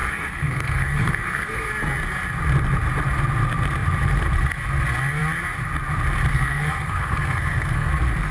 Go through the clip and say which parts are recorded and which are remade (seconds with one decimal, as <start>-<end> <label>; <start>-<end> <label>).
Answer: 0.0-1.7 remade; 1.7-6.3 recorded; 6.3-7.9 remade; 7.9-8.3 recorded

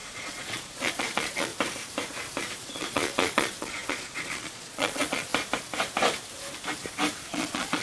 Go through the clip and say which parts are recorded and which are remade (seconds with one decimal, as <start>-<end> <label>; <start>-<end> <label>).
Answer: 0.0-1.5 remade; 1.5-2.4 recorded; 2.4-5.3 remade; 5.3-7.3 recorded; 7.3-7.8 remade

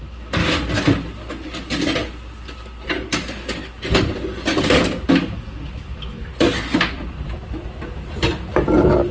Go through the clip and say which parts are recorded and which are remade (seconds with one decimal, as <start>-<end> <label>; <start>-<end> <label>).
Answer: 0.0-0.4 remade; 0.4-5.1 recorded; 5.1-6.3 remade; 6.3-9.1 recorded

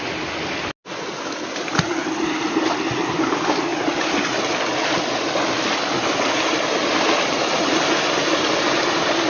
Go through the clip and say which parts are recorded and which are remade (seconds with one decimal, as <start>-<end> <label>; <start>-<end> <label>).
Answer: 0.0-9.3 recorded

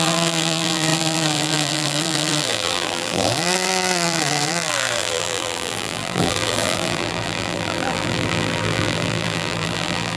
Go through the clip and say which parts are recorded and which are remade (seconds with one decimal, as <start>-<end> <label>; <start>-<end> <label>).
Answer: 0.0-10.2 remade

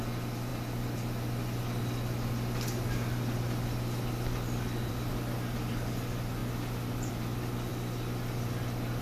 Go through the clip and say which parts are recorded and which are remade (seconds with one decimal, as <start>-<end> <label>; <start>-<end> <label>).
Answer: 0.0-9.0 recorded

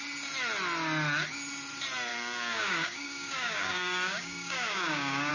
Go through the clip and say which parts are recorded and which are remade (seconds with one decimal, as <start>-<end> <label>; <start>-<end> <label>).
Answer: 0.0-2.1 recorded; 2.1-5.3 remade